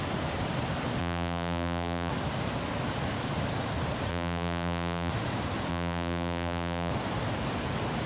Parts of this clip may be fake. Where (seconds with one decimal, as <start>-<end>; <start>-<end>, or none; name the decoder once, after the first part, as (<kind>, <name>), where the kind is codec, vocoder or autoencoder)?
1.0-2.1 (vocoder, BigVGAN v2); 4.1-5.1; 5.7-6.9